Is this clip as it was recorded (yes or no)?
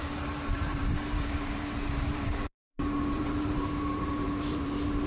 no